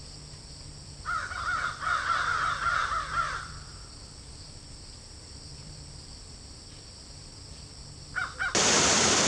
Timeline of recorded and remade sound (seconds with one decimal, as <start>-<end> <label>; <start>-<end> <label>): 0.0-9.3 remade

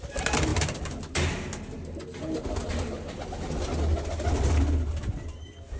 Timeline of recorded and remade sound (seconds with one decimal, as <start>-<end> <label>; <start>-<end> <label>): 0.0-5.8 recorded

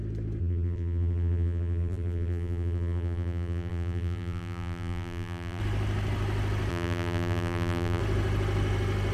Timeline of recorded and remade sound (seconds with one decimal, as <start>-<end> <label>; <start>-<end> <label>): 0.0-0.4 recorded; 0.4-5.6 remade; 5.6-6.7 recorded; 6.7-8.0 remade; 8.0-9.1 recorded

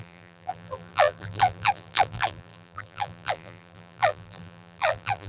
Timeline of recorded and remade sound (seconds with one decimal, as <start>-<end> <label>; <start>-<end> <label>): 0.0-5.3 remade

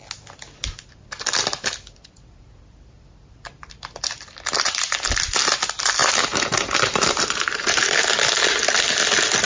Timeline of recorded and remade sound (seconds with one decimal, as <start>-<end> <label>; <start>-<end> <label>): 0.0-6.0 recorded; 6.0-7.6 remade; 7.6-9.5 recorded

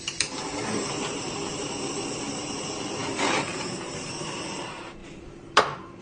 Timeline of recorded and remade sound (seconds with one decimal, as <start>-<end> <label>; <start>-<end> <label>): 0.0-1.5 remade; 1.5-2.2 recorded; 2.2-6.0 remade

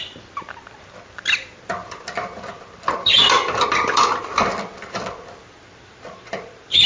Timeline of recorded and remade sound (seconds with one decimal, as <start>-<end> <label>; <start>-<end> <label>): 0.0-6.9 remade